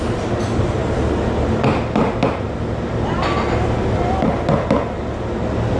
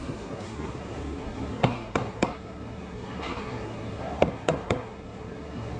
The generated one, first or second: second